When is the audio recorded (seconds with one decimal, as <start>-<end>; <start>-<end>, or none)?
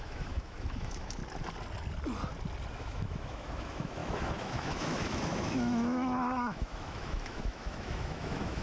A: 1.2-2.7